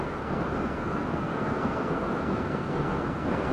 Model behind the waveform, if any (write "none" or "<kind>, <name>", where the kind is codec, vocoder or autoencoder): codec, SNAC